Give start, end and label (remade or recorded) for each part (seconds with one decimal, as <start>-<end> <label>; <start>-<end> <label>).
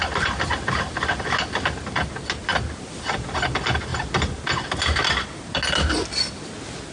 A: 0.0-6.9 recorded